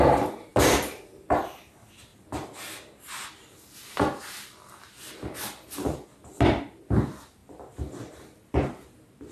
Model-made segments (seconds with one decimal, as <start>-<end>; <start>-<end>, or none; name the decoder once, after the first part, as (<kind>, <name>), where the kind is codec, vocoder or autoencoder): none